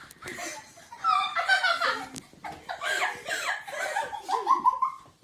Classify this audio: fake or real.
fake